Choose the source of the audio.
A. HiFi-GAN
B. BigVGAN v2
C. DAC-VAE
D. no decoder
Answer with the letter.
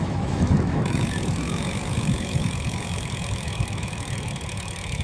C